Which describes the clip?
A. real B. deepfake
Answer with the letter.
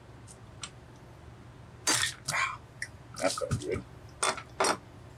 A